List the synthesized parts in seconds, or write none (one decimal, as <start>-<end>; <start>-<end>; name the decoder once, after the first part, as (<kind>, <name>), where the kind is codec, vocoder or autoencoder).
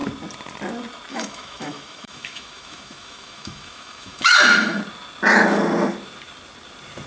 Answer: 1.1-4.8 (autoencoder, DAC-VAE)